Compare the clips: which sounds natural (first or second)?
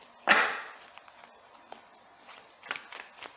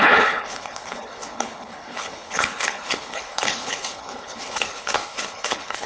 first